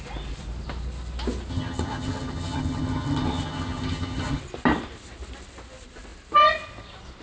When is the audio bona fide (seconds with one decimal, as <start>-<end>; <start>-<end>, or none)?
0.0-1.5; 4.4-7.2